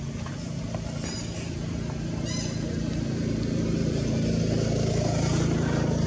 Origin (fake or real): real